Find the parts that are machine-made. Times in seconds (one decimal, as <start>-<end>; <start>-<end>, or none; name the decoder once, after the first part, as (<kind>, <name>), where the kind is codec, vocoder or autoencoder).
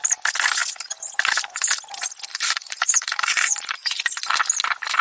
2.3-4.0 (vocoder, BigVGAN v2)